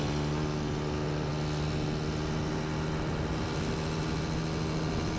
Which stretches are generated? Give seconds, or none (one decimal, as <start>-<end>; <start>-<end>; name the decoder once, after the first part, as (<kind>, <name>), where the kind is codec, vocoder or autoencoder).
none